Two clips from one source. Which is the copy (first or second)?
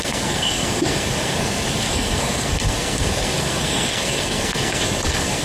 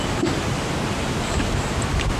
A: first